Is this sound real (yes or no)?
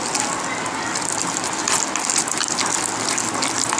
yes